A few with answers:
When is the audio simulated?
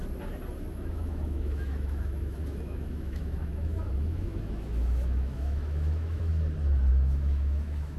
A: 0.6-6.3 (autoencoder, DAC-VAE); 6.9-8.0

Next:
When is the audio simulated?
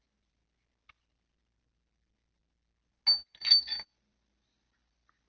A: none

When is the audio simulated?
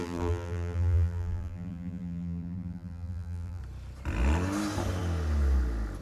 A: 0.0-3.6 (vocoder, BigVGAN v2)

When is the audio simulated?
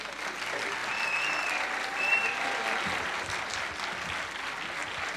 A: none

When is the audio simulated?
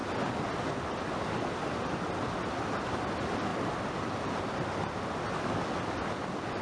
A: none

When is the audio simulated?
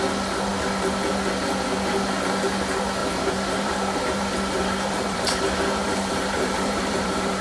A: 3.0-7.4 (vocoder, BigVGAN v2)